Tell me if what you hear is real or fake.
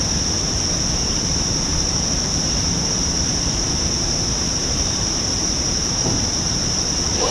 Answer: fake